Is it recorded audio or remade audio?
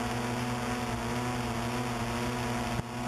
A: recorded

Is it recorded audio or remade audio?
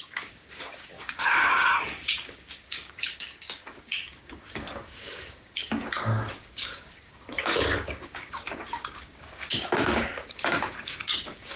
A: remade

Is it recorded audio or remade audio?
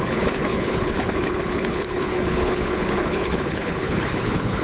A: remade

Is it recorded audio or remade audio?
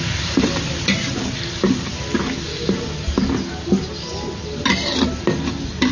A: recorded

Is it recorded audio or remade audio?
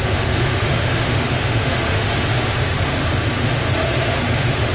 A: remade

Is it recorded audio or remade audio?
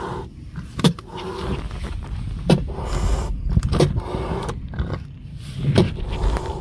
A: recorded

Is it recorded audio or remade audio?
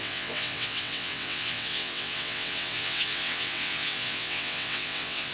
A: remade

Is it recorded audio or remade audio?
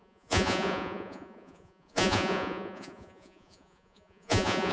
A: remade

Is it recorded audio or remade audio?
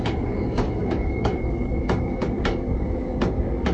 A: remade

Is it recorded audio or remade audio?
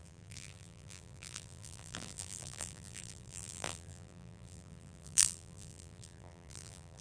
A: remade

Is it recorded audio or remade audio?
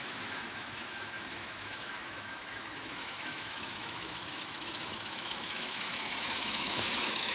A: remade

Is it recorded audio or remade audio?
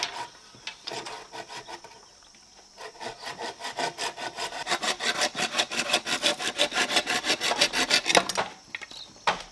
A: recorded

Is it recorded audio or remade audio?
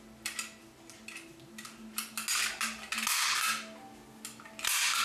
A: recorded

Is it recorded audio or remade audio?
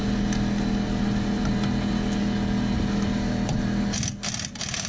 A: recorded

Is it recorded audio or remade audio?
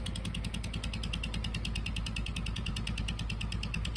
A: recorded